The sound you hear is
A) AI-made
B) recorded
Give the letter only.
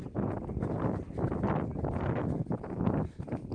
B